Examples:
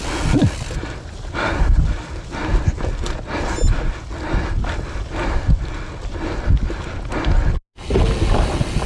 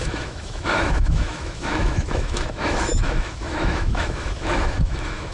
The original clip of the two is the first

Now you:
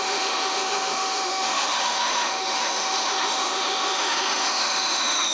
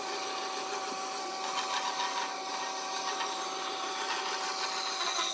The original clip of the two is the second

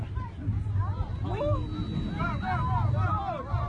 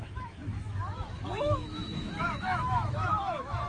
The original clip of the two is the first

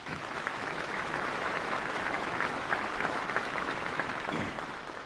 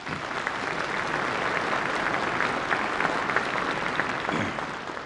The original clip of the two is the second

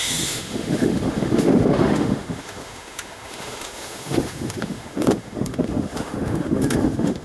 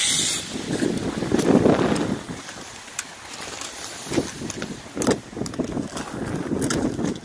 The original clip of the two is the second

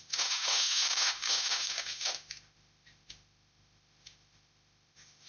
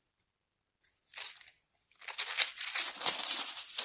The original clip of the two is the second